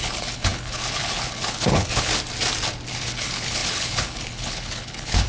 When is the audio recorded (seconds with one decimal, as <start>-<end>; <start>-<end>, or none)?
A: 2.1-2.9